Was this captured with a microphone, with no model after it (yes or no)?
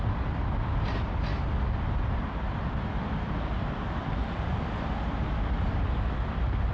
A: yes